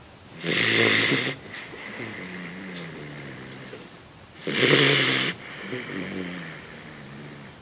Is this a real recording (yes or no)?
yes